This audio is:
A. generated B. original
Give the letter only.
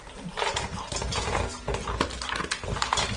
B